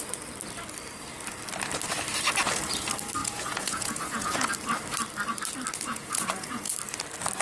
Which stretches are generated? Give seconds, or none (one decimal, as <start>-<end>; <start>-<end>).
3.2-4.5; 5.9-6.7

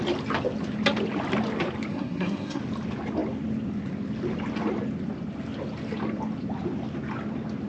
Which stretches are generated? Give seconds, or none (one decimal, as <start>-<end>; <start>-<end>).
1.9-2.6

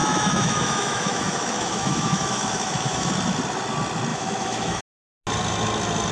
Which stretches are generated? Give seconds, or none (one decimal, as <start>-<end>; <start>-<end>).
0.0-3.1; 4.1-4.8